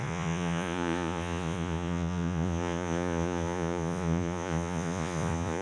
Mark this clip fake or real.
fake